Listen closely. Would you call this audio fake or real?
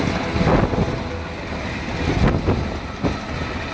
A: real